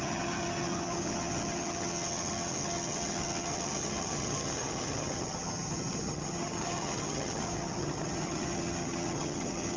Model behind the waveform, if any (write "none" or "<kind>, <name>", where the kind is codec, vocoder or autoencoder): vocoder, HiFi-GAN